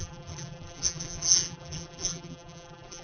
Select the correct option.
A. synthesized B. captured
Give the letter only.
A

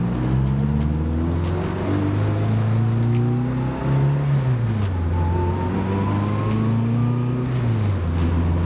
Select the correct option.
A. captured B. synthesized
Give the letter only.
A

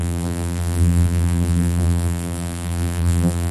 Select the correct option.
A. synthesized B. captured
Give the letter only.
A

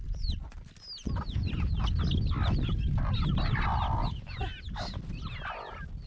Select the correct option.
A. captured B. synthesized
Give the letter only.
A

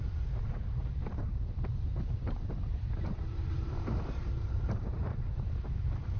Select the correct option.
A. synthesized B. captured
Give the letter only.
A